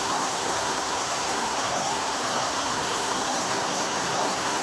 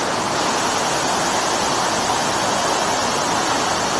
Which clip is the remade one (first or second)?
first